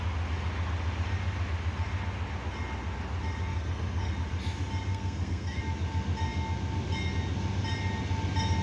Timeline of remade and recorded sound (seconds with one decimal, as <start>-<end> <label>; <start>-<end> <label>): 0.0-3.5 recorded; 3.5-4.1 remade; 4.1-4.9 recorded; 4.9-5.6 remade; 5.6-8.6 recorded